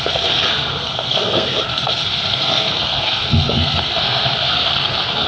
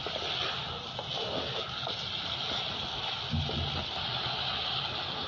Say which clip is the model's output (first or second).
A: first